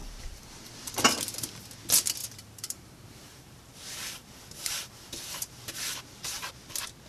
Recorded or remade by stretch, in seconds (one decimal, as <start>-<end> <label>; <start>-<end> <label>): 0.0-0.9 remade; 0.9-2.2 recorded; 2.2-6.5 remade; 6.5-7.1 recorded